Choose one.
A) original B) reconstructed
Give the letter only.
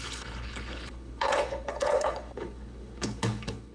B